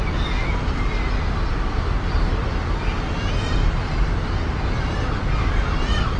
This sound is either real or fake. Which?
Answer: real